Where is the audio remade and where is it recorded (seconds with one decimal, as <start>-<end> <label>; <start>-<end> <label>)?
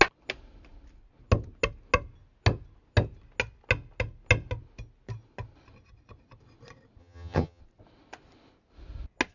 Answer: 0.0-7.0 recorded; 7.0-7.6 remade; 7.6-9.3 recorded